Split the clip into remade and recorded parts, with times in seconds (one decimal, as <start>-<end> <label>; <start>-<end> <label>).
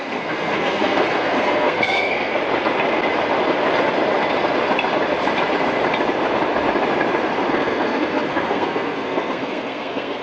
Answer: 0.0-2.3 remade; 2.3-7.5 recorded; 7.5-10.2 remade